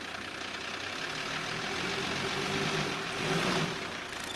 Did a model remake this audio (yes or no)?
yes